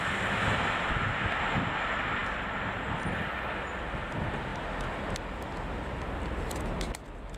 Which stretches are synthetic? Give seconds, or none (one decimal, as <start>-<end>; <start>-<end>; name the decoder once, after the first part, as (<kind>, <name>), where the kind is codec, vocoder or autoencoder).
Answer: none